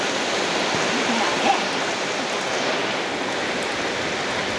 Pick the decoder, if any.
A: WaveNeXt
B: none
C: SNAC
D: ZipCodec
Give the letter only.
B